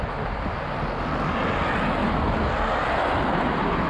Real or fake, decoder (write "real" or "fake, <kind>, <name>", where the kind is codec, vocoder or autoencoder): real